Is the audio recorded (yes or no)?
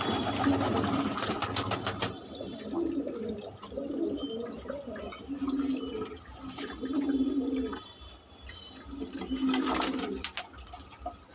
yes